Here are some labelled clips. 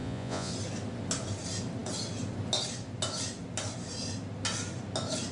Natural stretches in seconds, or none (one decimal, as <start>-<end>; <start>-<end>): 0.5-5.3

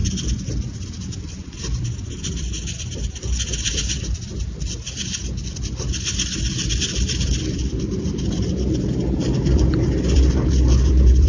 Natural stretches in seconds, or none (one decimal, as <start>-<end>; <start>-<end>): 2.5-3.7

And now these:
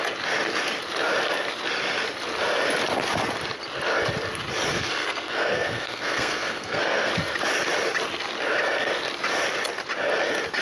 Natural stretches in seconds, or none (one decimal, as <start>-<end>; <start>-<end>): 0.0-4.7; 7.1-10.6